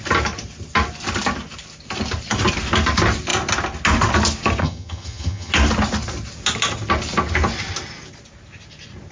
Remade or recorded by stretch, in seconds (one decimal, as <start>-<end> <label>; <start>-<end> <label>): 0.0-4.6 recorded; 4.6-5.5 remade; 5.5-9.1 recorded